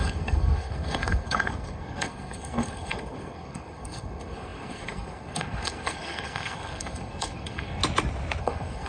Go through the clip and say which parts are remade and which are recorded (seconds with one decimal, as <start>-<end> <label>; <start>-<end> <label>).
0.0-7.8 remade; 7.8-8.4 recorded; 8.4-8.9 remade